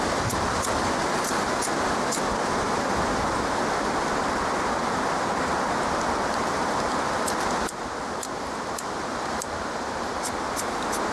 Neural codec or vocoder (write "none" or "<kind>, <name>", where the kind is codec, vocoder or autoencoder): none